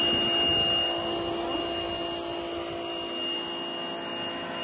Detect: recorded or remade recorded